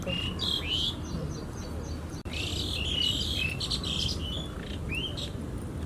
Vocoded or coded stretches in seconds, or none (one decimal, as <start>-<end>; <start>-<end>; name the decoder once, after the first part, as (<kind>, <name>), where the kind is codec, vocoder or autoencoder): none